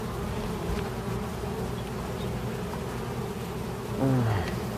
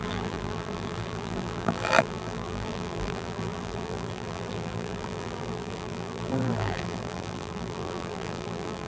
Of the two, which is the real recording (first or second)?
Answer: first